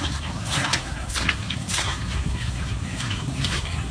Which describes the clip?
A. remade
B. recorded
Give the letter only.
A